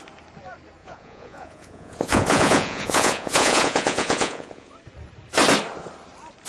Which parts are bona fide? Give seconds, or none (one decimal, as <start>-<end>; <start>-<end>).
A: 0.0-0.8; 4.7-6.5